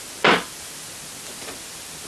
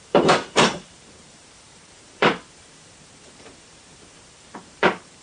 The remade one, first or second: second